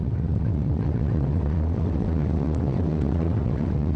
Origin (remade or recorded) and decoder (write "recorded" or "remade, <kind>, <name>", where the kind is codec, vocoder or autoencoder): remade, vocoder, WaveNeXt